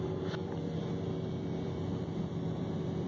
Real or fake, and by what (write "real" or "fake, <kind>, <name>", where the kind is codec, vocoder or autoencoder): fake, vocoder, BigVGAN v2